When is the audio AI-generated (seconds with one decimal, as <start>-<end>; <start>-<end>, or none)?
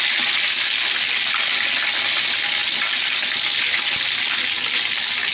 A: none